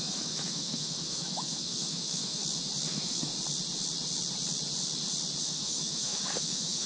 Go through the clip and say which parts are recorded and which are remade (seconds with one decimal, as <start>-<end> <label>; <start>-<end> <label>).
0.0-2.4 remade; 2.4-2.9 recorded; 2.9-3.3 remade; 3.3-5.4 recorded; 5.4-6.9 remade